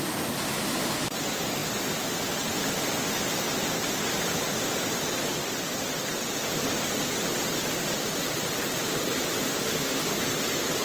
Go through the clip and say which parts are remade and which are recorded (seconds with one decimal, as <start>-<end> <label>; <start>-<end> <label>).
0.0-9.4 recorded; 9.4-10.2 remade; 10.2-10.8 recorded